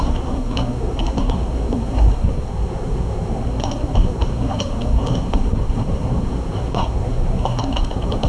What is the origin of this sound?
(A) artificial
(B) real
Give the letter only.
A